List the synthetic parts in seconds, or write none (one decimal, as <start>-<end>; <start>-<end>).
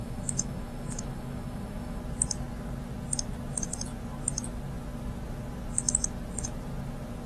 0.0-2.0